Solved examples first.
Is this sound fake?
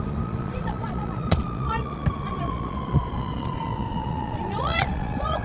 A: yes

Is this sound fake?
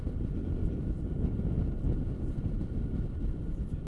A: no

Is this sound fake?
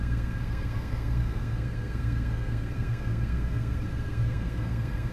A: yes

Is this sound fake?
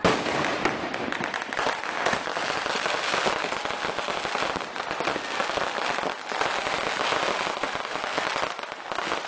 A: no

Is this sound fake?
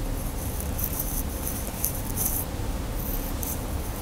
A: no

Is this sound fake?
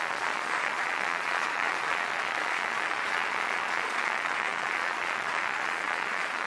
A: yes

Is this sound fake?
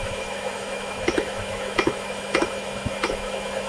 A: yes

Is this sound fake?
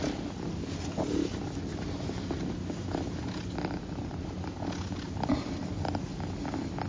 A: no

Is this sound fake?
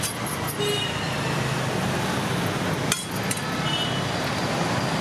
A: no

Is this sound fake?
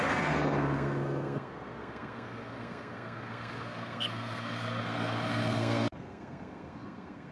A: yes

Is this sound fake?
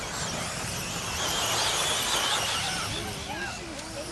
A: no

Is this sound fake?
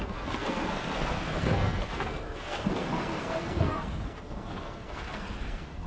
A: yes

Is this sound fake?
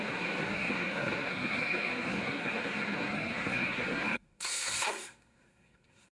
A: yes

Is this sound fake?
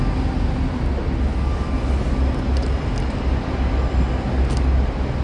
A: no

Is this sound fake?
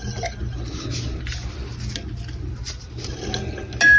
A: no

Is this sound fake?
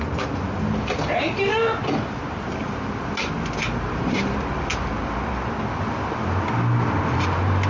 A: no